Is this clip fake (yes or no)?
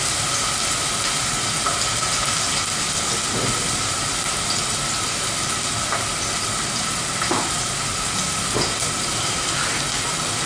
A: no